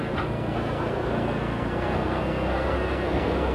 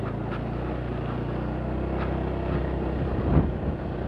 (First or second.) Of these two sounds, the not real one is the first